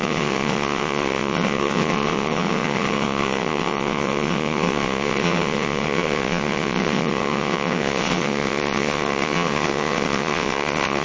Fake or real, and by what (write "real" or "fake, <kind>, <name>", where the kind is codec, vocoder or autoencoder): fake, vocoder, WaveNeXt